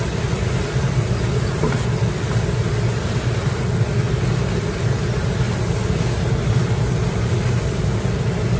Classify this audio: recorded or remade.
recorded